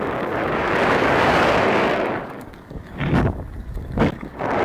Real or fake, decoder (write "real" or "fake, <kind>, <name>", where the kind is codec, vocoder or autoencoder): fake, codec, DAC